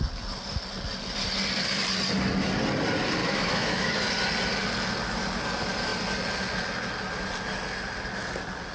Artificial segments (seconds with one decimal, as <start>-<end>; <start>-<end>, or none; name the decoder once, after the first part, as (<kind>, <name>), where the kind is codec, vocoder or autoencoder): 3.2-4.1 (autoencoder, DAC-VAE)